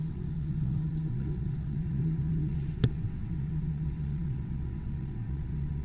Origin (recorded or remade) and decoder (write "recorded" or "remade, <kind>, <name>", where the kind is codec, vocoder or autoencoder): remade, vocoder, WaveNeXt